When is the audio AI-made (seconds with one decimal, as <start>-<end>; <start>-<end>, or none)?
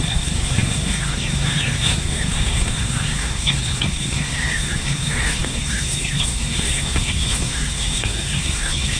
0.0-9.0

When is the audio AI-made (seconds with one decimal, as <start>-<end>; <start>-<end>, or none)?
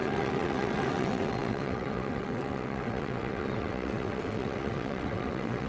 0.0-5.7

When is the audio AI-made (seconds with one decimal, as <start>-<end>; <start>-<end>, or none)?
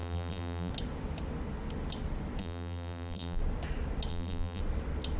0.0-0.7; 2.4-3.4; 4.1-4.6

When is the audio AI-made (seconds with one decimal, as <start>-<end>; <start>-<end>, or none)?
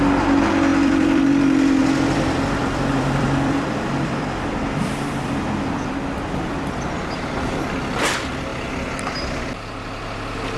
0.7-1.3; 1.8-5.4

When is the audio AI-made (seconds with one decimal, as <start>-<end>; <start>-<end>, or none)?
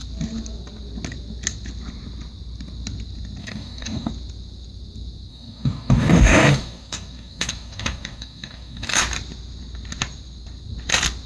3.4-4.1; 5.3-9.0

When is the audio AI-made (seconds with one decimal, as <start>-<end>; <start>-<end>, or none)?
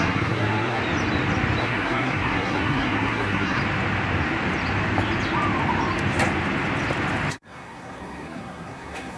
0.0-0.8; 1.6-3.6; 7.3-9.2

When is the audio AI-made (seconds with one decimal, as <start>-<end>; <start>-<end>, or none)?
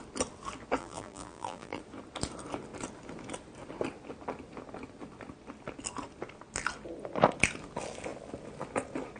0.8-1.8